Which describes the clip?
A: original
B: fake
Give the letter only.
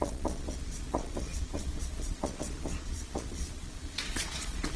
B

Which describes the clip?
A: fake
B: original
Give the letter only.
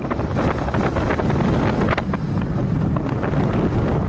B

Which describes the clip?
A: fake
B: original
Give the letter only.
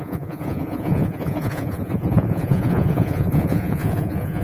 A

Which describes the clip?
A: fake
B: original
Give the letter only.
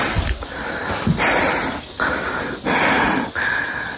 B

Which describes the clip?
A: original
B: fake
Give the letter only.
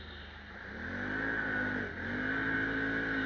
A